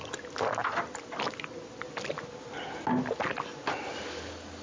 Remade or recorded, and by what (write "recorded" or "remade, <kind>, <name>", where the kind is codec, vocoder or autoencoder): recorded